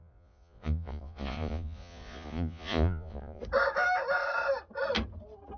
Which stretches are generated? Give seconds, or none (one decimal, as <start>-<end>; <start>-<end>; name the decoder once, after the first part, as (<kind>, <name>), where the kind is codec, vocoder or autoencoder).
0.0-3.4 (vocoder, Vocos)